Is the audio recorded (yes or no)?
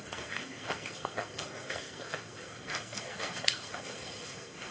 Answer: no